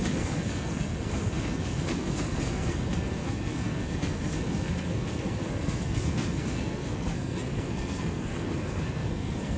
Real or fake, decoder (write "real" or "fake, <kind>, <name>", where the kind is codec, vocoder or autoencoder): fake, codec, SNAC